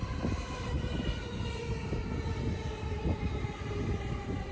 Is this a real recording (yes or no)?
yes